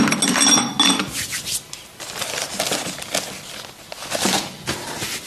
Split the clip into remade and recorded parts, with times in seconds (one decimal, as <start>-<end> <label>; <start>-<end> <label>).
0.0-5.3 recorded